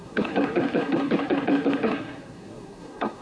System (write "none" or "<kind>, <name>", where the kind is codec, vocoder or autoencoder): codec, SNAC